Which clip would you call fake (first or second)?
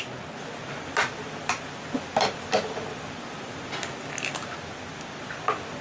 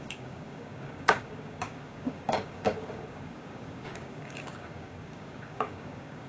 second